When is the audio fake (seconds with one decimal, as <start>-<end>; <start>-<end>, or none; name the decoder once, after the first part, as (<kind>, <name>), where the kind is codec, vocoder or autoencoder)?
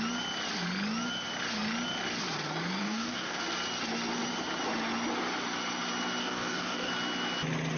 2.8-3.4 (codec, DAC); 6.2-6.9